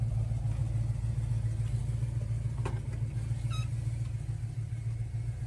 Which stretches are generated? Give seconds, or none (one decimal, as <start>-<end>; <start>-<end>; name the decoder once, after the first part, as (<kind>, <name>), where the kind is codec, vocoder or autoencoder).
none